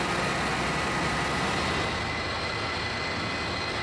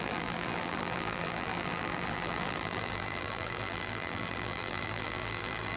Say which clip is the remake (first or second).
second